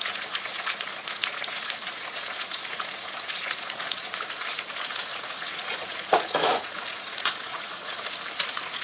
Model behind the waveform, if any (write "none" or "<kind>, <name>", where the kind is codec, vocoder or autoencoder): vocoder, Vocos